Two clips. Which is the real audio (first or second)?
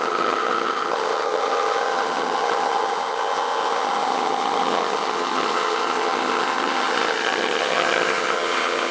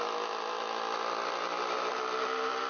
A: second